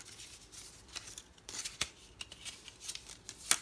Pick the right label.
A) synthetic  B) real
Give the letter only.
B